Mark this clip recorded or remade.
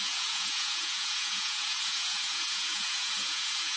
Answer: remade